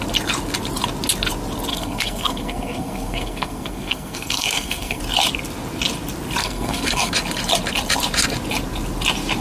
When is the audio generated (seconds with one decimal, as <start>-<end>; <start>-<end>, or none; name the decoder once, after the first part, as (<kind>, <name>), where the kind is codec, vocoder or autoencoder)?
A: 1.7-5.0 (codec, SNAC); 6.4-7.1